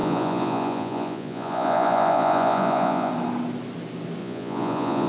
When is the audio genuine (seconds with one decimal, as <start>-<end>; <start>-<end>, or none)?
3.1-4.2